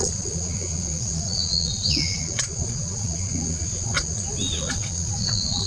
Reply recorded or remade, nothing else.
remade